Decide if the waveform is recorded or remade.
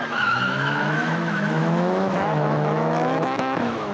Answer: remade